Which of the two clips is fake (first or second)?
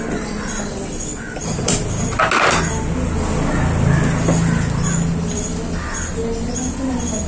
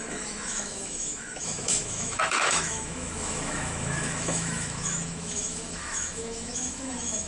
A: second